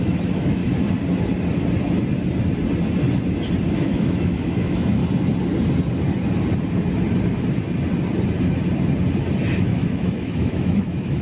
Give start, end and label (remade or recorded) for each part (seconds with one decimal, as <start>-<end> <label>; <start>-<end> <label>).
0.0-0.6 remade; 0.6-3.7 recorded; 3.7-5.0 remade; 5.0-9.6 recorded; 9.6-11.2 remade